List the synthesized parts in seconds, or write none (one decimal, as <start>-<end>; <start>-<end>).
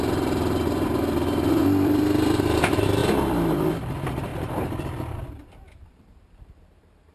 0.0-3.0; 3.5-7.1